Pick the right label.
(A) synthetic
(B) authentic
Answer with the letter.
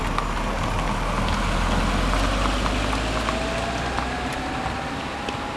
B